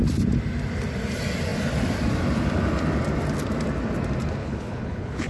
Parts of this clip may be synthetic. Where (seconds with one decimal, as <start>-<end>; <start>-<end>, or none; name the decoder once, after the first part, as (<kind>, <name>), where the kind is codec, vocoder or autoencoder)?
4.4-5.3 (codec, HILCodec)